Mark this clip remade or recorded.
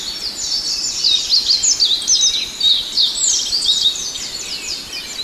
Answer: recorded